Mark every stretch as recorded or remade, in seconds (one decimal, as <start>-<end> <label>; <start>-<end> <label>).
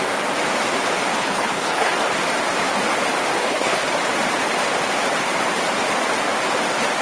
0.0-1.2 recorded; 1.2-1.9 remade; 1.9-3.4 recorded; 3.4-3.9 remade; 3.9-7.0 recorded